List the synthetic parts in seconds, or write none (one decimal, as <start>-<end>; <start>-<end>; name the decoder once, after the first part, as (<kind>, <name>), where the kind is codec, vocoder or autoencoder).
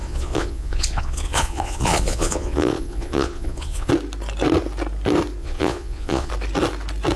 0.0-3.9 (vocoder, Vocos); 5.4-6.3